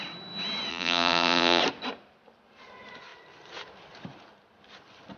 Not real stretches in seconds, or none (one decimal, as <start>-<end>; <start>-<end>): 0.7-1.6